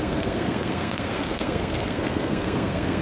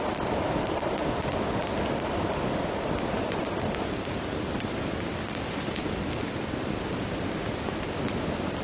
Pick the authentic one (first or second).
second